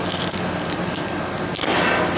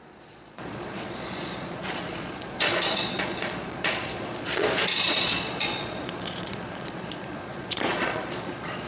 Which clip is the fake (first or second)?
second